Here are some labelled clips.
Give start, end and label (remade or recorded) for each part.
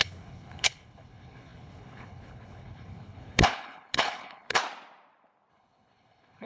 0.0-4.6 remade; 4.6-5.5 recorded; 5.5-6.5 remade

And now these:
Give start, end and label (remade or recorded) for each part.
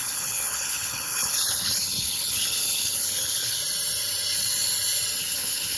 0.0-3.6 remade; 3.6-5.2 recorded; 5.2-5.8 remade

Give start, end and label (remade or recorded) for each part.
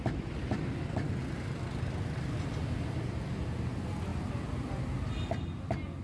0.0-6.0 recorded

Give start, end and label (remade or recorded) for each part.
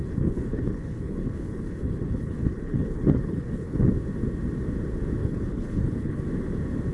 0.0-3.8 remade; 3.8-5.2 recorded; 5.2-6.2 remade; 6.2-6.9 recorded